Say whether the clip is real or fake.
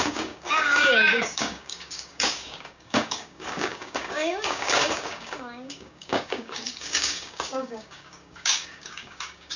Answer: fake